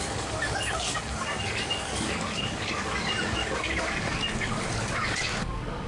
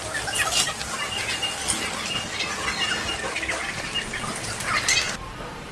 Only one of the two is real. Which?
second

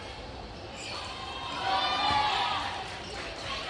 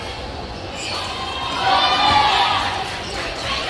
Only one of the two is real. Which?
first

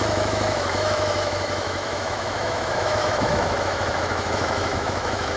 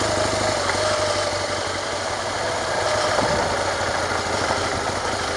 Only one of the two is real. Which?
second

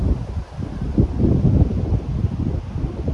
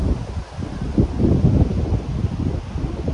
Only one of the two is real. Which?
second